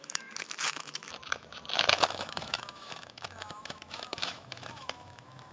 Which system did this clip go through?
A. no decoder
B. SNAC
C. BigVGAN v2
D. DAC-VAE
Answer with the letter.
D